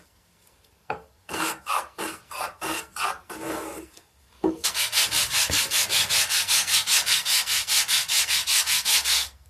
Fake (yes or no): yes